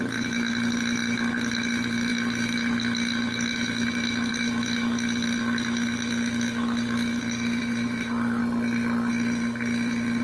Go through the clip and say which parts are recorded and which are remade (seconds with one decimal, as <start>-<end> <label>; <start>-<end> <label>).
0.0-8.4 remade; 8.4-9.1 recorded; 9.1-10.2 remade